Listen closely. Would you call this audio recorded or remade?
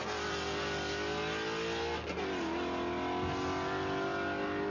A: recorded